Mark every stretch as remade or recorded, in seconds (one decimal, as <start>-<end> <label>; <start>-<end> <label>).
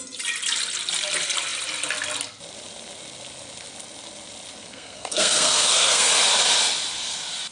0.0-4.6 recorded; 4.6-6.1 remade; 6.1-7.5 recorded